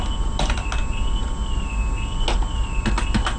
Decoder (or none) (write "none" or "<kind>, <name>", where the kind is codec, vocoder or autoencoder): none